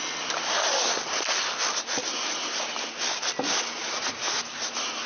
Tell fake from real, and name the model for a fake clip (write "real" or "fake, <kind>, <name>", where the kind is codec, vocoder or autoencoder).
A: real